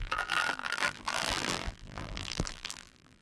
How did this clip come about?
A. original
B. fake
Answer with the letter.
B